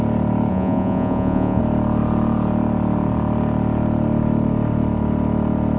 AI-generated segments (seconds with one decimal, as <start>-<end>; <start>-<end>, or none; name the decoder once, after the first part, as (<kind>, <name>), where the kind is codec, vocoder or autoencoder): 0.5-1.6 (vocoder, Vocos)